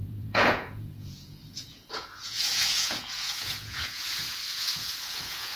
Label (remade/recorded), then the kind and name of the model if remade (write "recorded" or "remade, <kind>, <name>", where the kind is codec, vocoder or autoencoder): remade, vocoder, Vocos